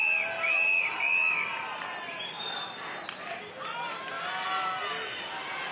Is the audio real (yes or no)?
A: yes